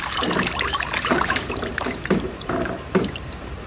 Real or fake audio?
fake